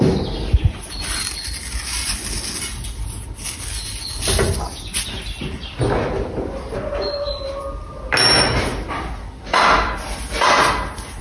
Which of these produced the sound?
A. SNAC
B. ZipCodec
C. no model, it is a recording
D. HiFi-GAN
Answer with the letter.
C